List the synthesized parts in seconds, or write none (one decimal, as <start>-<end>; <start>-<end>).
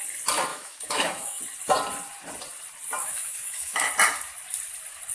0.5-1.4; 3.0-3.9